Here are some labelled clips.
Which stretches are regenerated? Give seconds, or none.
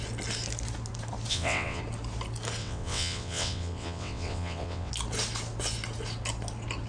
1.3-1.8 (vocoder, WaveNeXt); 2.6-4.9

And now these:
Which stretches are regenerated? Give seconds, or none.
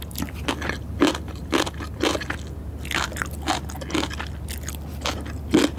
none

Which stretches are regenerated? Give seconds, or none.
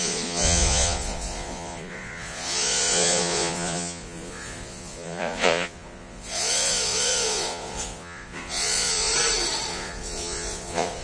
0.0-9.1 (vocoder, Vocos); 9.7-11.0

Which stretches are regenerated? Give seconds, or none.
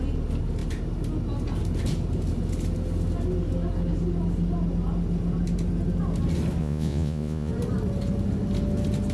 6.6-7.5 (vocoder, Vocos)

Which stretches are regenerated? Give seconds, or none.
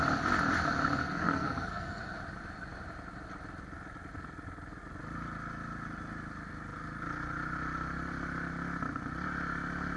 1.0-2.0 (codec, SNAC)